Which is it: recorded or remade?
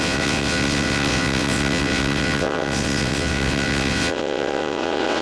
remade